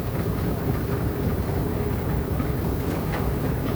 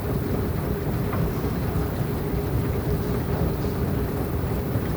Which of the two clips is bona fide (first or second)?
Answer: second